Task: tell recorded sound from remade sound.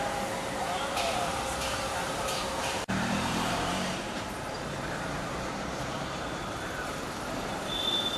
remade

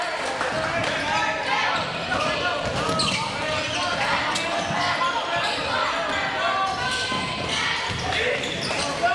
recorded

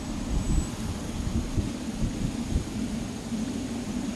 recorded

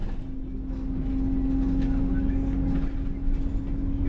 recorded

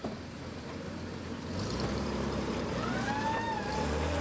remade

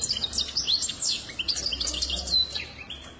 remade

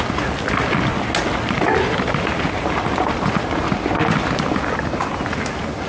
recorded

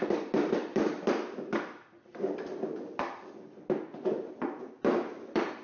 remade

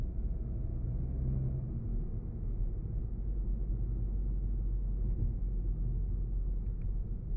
recorded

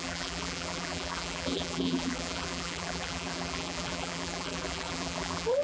remade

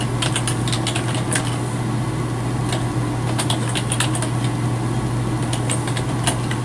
recorded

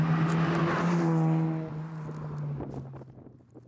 recorded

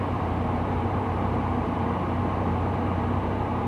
remade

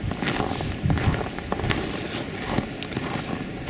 recorded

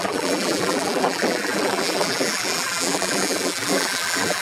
remade